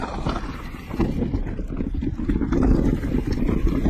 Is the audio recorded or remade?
recorded